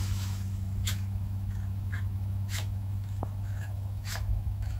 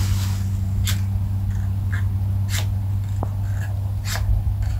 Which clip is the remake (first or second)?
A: first